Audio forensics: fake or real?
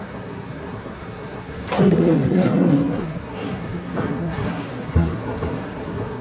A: fake